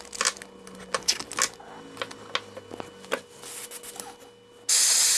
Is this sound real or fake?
real